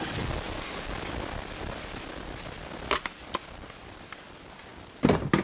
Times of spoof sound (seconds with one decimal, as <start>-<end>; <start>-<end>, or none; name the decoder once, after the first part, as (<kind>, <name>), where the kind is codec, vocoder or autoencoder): none